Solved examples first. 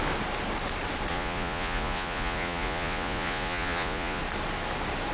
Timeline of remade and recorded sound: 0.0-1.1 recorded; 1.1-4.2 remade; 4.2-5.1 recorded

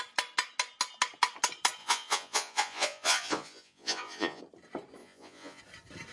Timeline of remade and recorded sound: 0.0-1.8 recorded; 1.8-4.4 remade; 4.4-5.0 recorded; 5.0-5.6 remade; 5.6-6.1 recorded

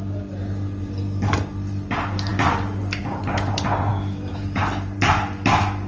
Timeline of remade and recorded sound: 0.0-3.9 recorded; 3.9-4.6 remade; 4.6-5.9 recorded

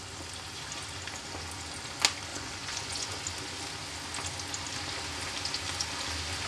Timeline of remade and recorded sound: 0.0-2.3 recorded; 2.3-3.2 remade; 3.2-6.5 recorded

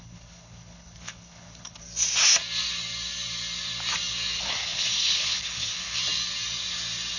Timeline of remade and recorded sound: 0.0-1.8 remade; 1.8-4.4 recorded; 4.4-6.0 remade; 6.0-7.2 recorded

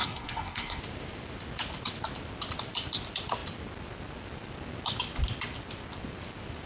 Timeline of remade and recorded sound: 0.0-0.8 remade; 0.8-6.7 recorded